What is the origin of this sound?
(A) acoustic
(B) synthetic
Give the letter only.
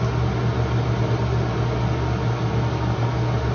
A